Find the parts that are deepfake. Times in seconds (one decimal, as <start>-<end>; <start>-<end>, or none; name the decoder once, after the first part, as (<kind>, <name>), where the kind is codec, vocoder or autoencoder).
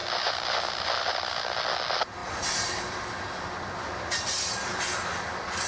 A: none